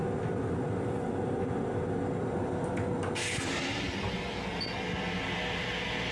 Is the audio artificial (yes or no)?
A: no